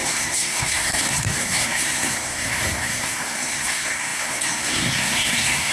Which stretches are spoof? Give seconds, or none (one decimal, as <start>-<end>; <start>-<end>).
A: 0.0-5.7